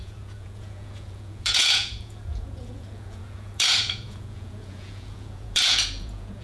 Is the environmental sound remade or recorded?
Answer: remade